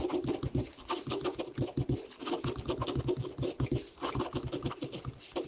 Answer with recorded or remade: recorded